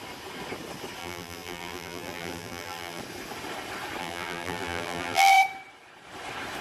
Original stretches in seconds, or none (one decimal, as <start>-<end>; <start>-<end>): 0.0-1.0; 3.0-4.0; 5.3-6.6